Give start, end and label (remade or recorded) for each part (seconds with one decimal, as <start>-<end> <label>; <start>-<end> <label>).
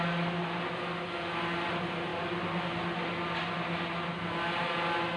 0.0-5.2 recorded